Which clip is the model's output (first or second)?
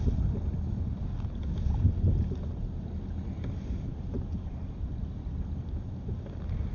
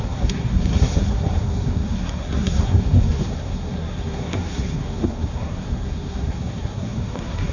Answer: second